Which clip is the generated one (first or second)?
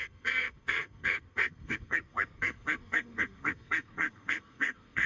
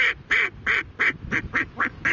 first